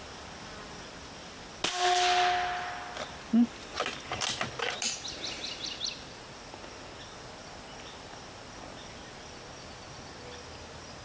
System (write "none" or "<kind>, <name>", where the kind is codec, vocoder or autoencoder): none